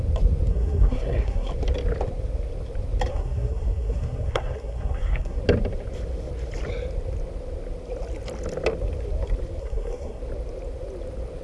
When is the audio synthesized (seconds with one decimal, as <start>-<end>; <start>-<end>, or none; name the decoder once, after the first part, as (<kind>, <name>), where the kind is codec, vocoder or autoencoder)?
0.5-1.5 (codec, SNAC); 3.1-5.4; 9.6-10.2